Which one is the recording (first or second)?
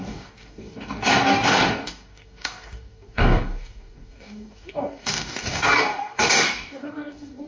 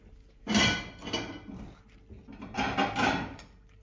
second